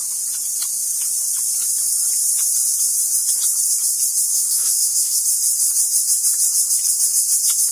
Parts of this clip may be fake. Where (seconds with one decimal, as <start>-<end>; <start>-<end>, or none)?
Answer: 4.3-5.2